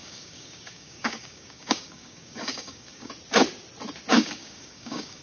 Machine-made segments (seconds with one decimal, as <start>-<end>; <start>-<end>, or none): 0.0-3.1; 4.1-5.2